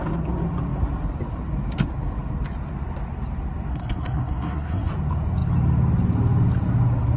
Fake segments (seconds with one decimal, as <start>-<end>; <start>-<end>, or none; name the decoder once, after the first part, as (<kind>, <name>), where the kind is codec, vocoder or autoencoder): 3.7-4.9 (codec, SNAC)